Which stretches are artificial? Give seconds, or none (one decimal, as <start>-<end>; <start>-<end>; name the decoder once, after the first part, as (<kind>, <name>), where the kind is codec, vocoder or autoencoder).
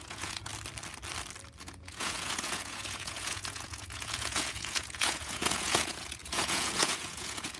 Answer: 0.0-0.5 (vocoder, Vocos); 1.6-7.6